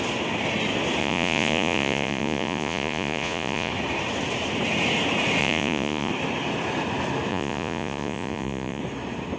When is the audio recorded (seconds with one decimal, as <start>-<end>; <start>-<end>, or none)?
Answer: 0.0-1.0; 3.7-5.4; 6.1-7.3; 8.8-9.4